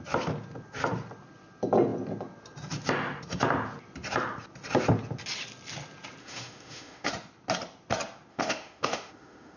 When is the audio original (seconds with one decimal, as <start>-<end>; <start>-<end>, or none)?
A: 0.0-6.2; 7.1-8.3